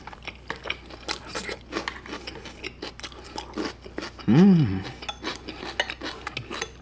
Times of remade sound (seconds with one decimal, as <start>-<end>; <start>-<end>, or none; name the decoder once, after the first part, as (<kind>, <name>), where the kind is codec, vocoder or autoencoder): none